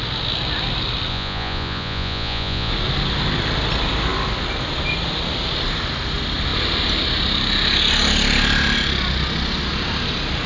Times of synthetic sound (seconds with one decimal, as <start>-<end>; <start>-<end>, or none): 1.1-2.7